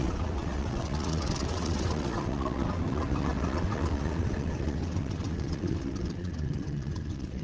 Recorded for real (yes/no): no